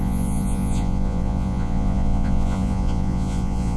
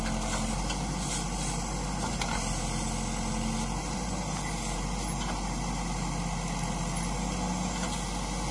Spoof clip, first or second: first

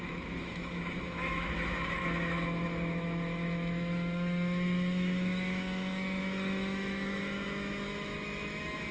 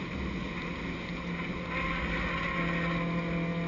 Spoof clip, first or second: first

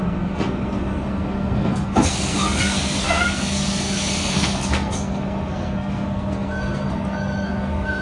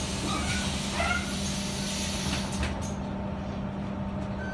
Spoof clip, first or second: first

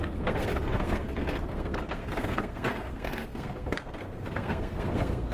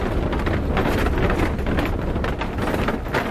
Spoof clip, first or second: first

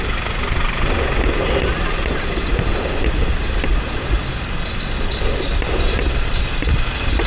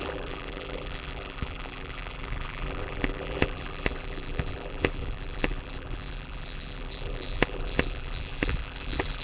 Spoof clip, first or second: second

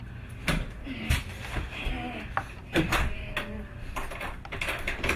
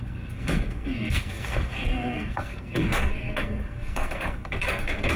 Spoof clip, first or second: second